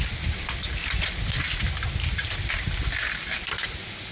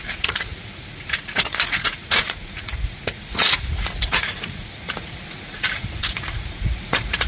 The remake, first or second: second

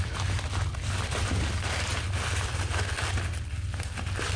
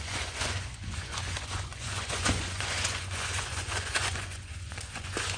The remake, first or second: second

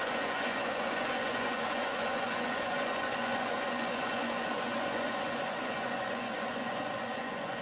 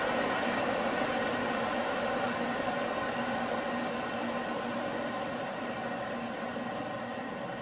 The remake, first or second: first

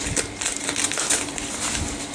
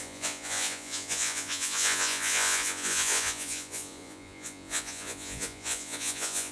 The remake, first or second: second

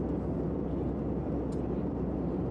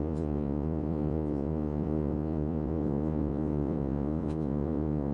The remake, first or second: second